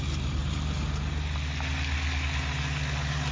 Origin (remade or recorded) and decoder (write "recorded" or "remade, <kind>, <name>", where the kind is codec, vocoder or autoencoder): recorded